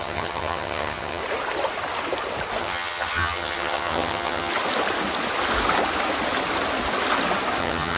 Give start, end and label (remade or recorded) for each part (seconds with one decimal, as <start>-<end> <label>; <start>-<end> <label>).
0.0-1.2 remade; 1.2-2.6 recorded; 2.6-4.5 remade; 4.5-7.6 recorded; 7.6-8.0 remade